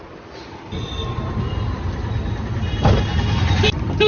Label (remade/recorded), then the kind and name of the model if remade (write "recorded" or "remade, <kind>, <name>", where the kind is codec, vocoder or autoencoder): recorded